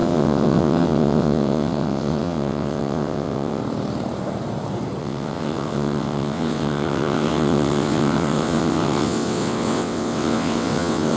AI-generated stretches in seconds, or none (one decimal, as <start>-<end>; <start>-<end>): 0.0-3.6; 5.0-11.2